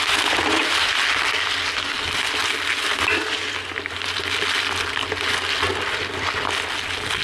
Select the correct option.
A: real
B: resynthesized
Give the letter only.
A